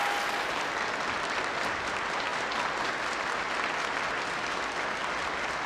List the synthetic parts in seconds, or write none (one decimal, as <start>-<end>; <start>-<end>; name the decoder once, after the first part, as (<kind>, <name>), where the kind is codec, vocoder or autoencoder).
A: none